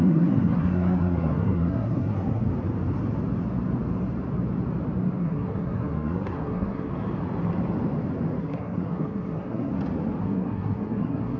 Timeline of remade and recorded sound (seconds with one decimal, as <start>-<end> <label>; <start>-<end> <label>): 0.0-2.5 remade; 2.5-5.2 recorded; 5.2-6.9 remade; 6.9-8.4 recorded; 8.4-9.7 remade; 9.7-10.2 recorded; 10.2-11.4 remade